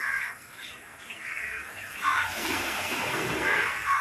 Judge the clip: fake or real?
fake